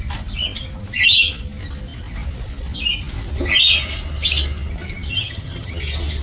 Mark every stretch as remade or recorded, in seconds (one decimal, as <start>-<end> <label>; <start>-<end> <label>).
0.0-5.1 recorded; 5.1-5.7 remade; 5.7-6.2 recorded